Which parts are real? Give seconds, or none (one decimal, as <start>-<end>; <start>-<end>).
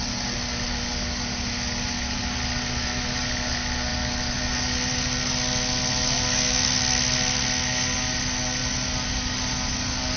0.0-10.2